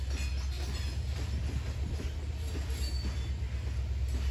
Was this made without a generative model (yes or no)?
yes